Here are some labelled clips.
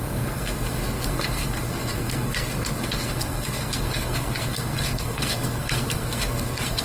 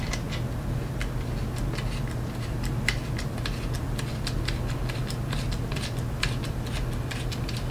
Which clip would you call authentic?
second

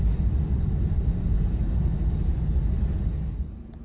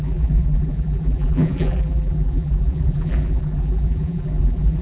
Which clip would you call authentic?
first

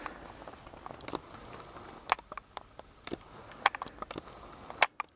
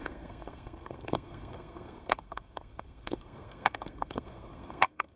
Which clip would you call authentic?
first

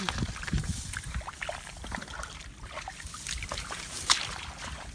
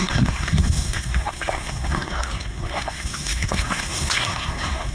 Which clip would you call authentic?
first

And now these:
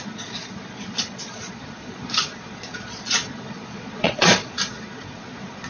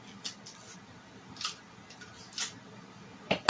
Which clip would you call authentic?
second